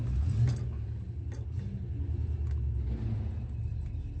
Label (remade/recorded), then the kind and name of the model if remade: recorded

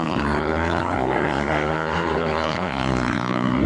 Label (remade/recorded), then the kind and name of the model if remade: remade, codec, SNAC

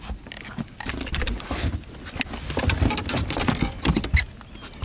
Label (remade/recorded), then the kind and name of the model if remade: recorded